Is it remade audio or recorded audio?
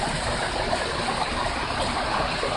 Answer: recorded